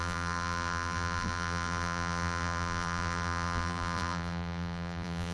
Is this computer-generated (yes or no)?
yes